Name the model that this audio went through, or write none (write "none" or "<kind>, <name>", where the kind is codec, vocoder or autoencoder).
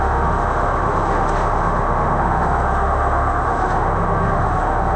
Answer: autoencoder, DAC-VAE